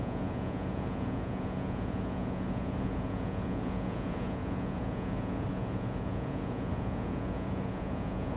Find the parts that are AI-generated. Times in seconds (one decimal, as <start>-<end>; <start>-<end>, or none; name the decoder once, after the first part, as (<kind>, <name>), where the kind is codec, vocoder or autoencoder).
0.0-8.4 (vocoder, Vocos)